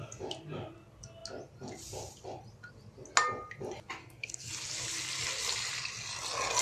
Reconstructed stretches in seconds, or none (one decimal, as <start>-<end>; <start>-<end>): 4.0-4.5